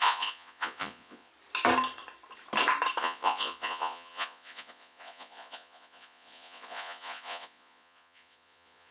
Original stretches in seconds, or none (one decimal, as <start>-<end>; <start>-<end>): 1.3-3.0